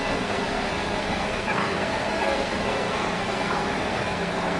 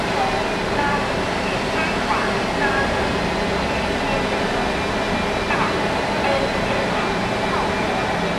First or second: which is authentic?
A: second